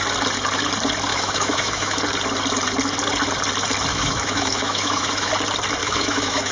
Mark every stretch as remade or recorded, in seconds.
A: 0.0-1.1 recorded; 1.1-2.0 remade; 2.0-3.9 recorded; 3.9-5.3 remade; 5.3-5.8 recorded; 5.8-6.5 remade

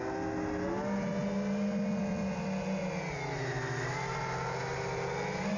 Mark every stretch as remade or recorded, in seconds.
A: 0.0-5.6 recorded

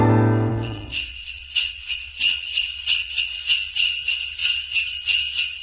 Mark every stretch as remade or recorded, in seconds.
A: 0.0-0.5 recorded; 0.5-3.4 remade; 3.4-5.6 recorded

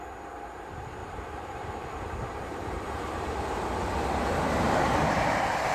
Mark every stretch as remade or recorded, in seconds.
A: 0.0-1.0 recorded; 1.0-3.4 remade; 3.4-5.7 recorded

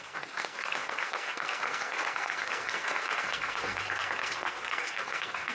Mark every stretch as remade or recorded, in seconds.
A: 0.0-5.5 remade